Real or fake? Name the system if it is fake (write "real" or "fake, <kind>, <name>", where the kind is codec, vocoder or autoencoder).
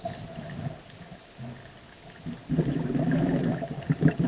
real